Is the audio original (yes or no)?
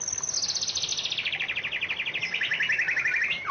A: yes